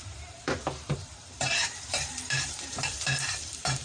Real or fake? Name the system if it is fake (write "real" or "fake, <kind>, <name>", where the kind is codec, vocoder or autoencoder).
fake, vocoder, BigVGAN v2